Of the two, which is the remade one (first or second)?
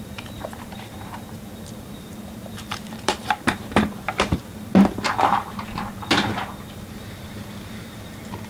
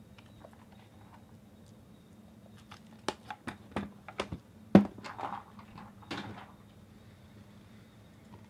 first